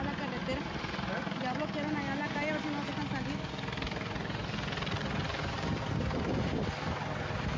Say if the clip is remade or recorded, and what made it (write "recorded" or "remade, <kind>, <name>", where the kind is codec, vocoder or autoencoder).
recorded